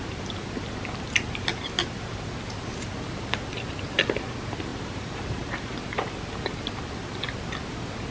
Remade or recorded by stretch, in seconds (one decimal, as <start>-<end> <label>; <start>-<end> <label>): 0.0-4.7 recorded; 4.7-6.1 remade; 6.1-8.1 recorded